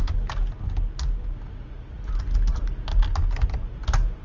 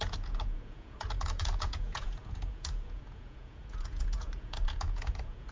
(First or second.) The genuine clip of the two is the first